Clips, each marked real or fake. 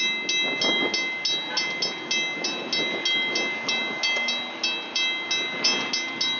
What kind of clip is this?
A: real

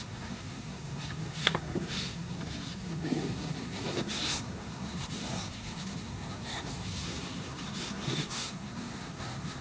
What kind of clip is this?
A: fake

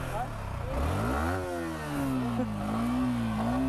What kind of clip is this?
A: real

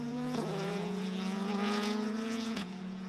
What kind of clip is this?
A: fake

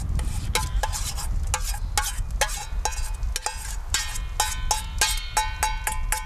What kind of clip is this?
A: real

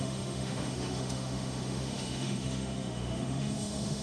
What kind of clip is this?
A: fake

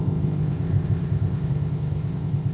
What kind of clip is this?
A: fake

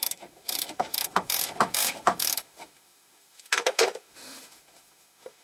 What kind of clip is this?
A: fake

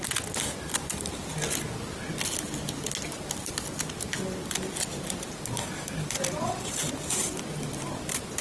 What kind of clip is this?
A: real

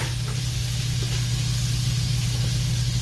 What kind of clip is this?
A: real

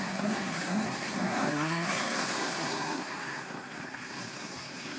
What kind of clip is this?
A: fake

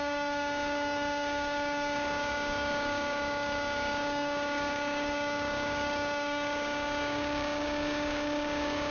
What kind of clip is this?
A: fake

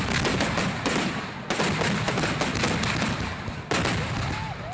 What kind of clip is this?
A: real